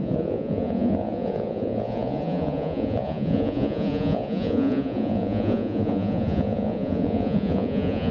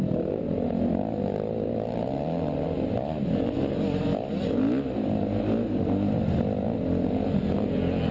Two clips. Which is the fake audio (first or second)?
first